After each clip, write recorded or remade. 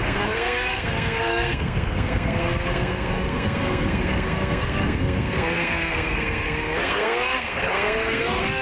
remade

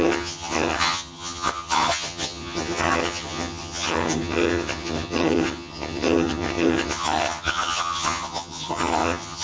remade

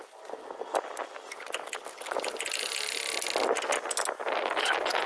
recorded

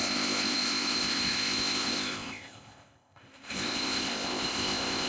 remade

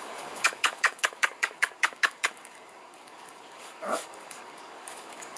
remade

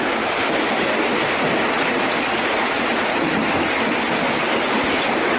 recorded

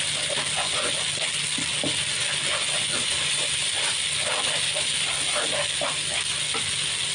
recorded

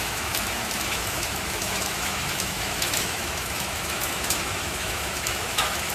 remade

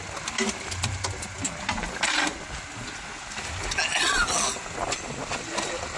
recorded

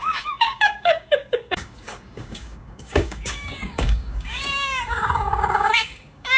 remade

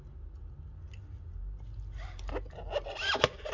recorded